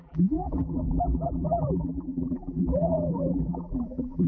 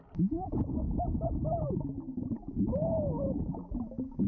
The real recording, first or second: second